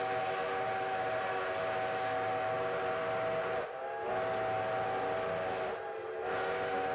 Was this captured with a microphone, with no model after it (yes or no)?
yes